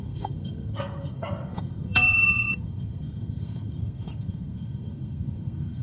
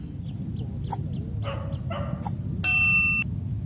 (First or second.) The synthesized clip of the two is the first